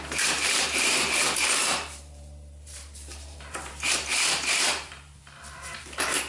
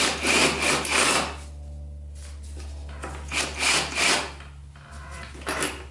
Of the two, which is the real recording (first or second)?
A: second